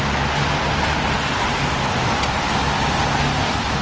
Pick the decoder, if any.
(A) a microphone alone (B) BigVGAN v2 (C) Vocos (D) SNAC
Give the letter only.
A